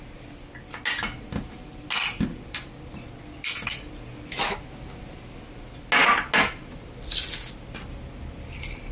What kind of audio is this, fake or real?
real